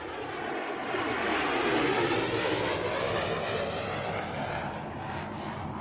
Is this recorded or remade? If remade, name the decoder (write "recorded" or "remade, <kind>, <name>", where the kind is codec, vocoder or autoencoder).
recorded